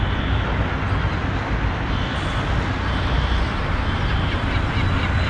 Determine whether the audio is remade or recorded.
recorded